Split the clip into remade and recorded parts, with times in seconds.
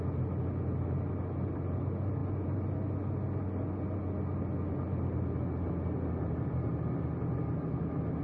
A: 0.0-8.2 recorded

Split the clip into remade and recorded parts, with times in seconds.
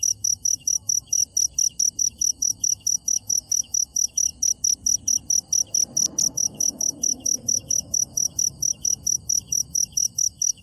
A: 0.0-1.2 remade; 1.2-2.0 recorded; 2.0-4.3 remade; 4.3-6.3 recorded; 6.3-10.6 remade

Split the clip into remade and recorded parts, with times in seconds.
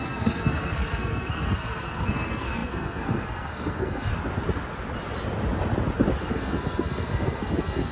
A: 0.0-4.1 remade; 4.1-6.2 recorded; 6.2-7.9 remade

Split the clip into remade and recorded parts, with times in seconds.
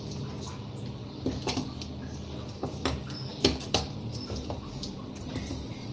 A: 0.0-5.9 recorded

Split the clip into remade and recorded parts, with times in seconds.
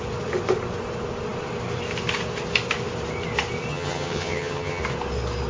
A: 0.0-3.7 recorded; 3.7-4.8 remade; 4.8-5.5 recorded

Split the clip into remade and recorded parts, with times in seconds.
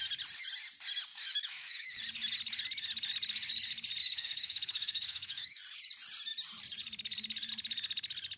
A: 0.0-1.1 recorded; 1.1-2.0 remade; 2.0-4.0 recorded; 4.0-5.6 remade; 5.6-8.4 recorded